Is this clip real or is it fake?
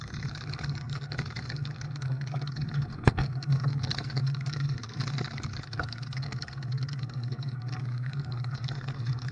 fake